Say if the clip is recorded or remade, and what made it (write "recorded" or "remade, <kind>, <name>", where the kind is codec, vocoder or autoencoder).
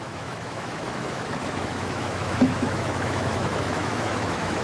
remade, autoencoder, DAC-VAE